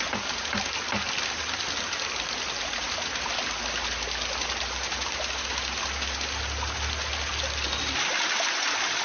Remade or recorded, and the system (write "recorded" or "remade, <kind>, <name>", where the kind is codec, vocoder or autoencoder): recorded